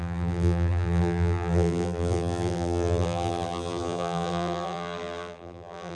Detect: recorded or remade remade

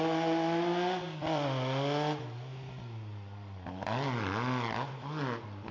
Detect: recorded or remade recorded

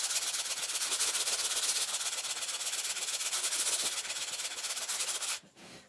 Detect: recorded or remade recorded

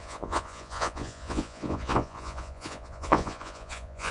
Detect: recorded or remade remade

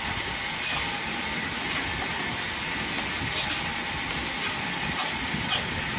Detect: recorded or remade recorded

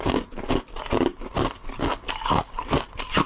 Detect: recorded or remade recorded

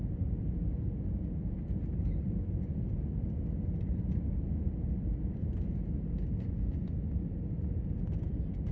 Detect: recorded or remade recorded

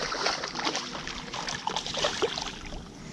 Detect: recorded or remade remade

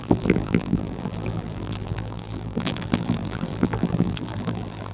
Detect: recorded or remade remade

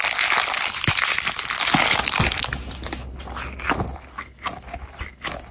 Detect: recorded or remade recorded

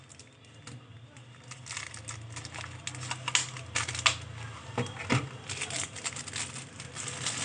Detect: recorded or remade recorded